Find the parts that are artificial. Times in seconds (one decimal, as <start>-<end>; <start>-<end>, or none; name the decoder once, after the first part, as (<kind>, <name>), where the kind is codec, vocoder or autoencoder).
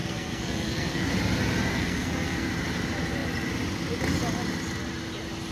0.0-1.1 (codec, SNAC); 1.7-2.5